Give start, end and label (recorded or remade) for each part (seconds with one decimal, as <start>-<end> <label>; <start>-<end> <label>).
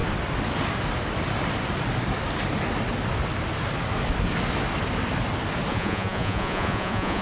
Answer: 0.0-5.7 recorded; 5.7-7.2 remade